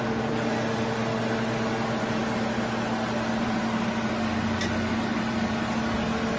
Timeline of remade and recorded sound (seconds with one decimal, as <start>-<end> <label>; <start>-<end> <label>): 0.0-6.4 recorded